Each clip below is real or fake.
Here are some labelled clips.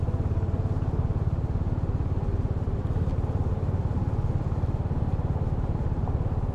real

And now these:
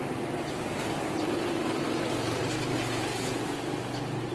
real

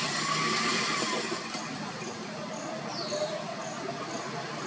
real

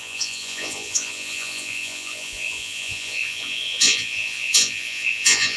fake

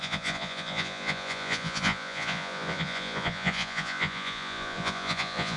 fake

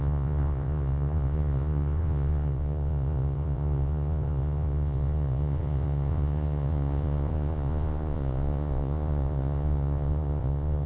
fake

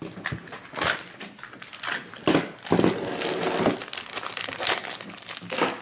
real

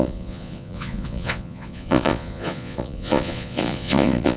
fake